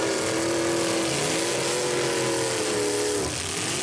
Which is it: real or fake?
real